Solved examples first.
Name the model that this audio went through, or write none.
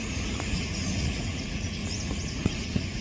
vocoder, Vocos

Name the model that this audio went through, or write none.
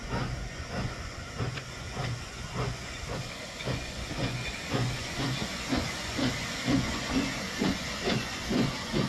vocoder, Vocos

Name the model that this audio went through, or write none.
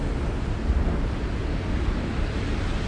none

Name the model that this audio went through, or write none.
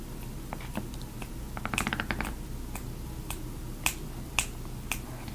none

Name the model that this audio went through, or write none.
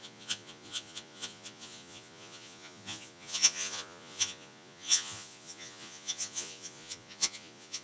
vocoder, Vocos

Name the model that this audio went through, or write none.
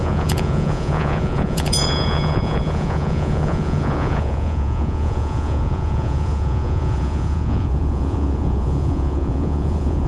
vocoder, Vocos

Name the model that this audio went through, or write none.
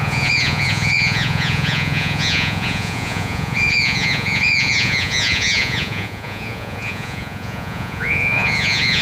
vocoder, Vocos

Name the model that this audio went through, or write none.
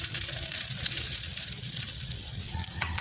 vocoder, Vocos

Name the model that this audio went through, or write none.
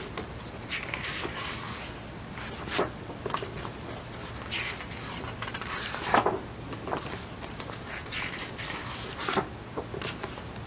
none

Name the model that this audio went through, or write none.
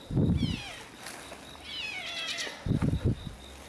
none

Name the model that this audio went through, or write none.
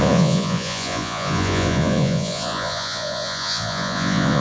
vocoder, Vocos